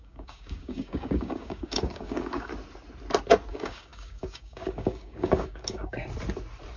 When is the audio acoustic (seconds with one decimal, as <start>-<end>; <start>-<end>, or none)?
2.5-3.5; 6.0-6.8